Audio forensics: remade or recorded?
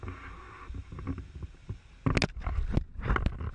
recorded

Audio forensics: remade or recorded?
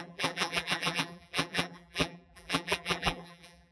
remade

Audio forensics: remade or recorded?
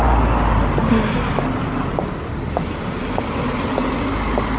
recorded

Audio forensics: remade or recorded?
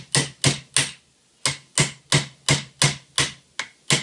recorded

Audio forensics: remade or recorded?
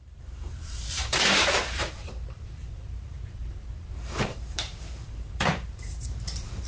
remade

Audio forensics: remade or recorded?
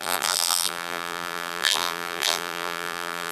remade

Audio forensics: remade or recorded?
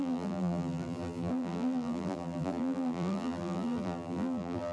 remade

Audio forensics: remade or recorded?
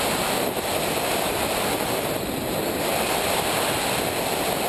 recorded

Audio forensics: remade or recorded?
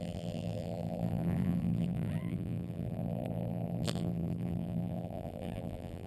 remade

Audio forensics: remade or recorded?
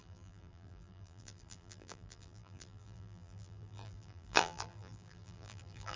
remade